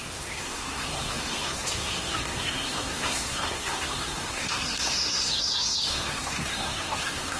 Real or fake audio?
fake